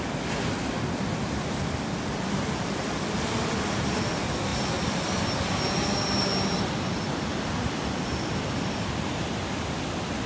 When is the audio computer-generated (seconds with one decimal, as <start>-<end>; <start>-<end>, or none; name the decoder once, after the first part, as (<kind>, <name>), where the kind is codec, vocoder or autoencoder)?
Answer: none